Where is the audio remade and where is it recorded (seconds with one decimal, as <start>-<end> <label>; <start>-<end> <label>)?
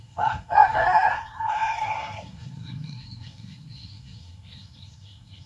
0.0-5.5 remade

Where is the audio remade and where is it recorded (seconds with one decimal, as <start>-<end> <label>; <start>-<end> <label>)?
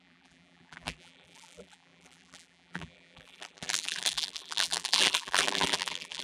0.0-6.2 remade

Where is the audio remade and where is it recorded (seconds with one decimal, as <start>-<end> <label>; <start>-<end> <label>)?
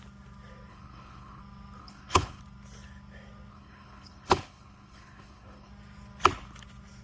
0.0-0.7 recorded; 0.7-1.4 remade; 1.4-1.8 recorded; 1.8-2.4 remade; 2.4-3.5 recorded; 3.5-5.7 remade; 5.7-7.0 recorded